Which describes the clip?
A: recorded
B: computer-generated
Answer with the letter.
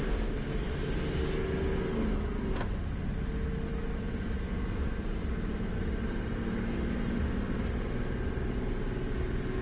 A